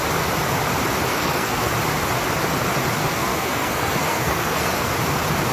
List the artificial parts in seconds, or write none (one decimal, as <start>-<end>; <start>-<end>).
1.1-1.7; 3.0-4.9